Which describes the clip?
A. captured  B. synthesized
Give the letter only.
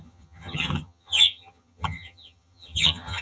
B